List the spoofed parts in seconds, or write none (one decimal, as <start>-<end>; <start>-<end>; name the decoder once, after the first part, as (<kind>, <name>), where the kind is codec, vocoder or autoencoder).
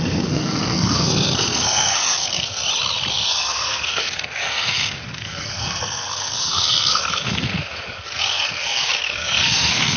0.0-2.6 (codec, SNAC); 3.1-10.0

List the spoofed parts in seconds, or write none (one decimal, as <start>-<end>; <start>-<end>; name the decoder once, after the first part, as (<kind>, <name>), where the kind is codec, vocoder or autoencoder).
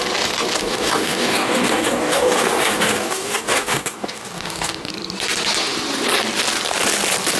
0.6-4.9 (codec, DAC)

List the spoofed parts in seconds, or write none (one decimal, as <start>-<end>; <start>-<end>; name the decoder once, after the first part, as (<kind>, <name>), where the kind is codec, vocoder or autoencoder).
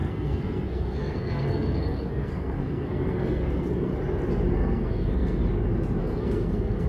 0.0-3.9 (codec, SNAC); 4.5-5.4; 6.0-6.9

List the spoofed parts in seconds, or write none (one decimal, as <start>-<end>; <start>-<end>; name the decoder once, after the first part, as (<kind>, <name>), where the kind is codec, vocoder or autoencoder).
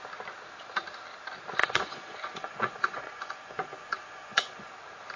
1.6-4.7 (vocoder, Vocos)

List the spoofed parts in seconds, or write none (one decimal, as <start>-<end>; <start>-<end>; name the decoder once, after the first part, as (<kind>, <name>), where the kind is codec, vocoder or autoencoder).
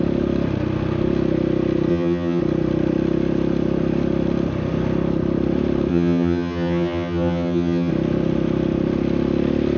1.9-2.4 (vocoder, HiFi-GAN); 5.9-7.9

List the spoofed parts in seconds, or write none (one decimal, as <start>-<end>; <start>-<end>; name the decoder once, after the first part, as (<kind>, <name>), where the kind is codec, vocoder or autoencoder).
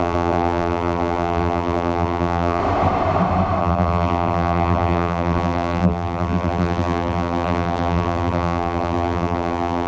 0.0-2.6 (vocoder, BigVGAN v2); 3.6-9.9